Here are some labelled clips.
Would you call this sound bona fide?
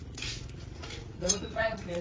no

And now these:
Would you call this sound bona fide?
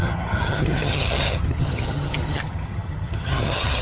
no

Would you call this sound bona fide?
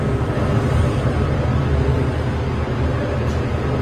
yes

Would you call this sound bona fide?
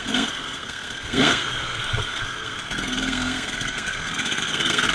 no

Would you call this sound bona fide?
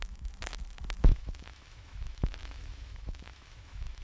no